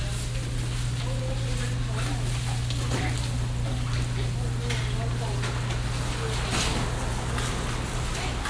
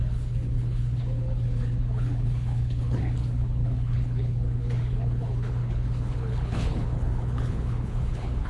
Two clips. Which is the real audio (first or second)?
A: first